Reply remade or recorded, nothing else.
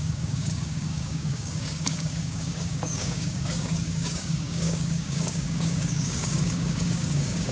remade